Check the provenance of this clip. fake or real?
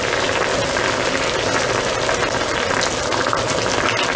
real